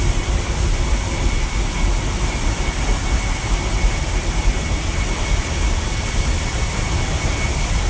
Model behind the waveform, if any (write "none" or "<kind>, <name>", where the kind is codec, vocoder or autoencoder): none